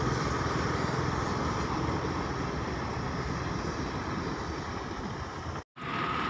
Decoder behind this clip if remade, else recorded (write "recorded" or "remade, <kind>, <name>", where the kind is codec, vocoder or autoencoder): recorded